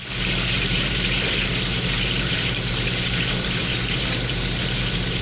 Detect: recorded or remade remade